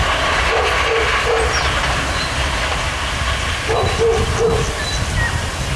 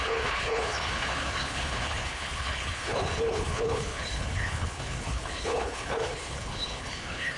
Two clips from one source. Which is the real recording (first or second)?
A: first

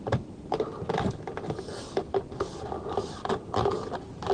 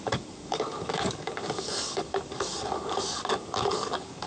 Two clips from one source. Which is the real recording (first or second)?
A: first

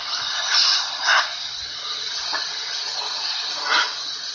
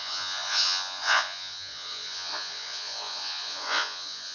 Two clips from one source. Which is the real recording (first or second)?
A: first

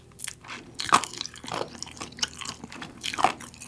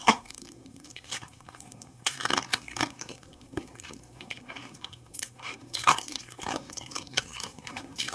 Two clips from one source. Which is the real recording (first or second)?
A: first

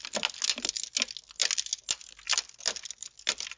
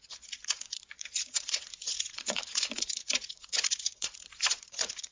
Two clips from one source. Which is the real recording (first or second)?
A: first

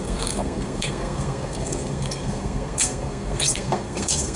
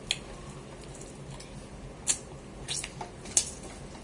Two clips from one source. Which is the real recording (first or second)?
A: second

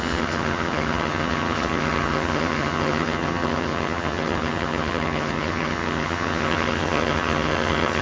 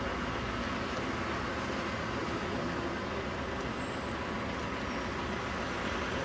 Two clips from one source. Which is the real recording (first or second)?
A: second